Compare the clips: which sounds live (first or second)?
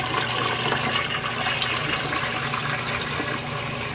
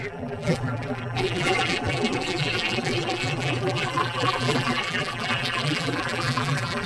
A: first